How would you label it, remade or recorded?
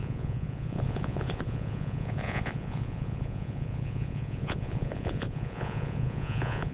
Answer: remade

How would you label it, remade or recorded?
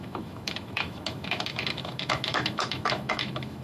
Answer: remade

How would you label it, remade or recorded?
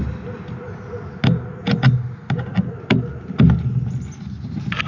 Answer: recorded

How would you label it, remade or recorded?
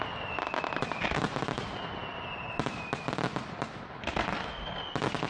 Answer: recorded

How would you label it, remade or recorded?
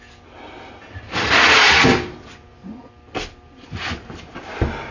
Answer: recorded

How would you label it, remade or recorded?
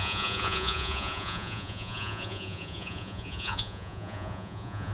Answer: remade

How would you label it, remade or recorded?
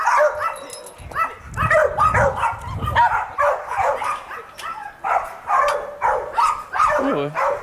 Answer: recorded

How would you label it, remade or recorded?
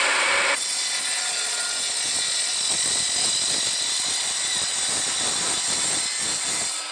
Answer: recorded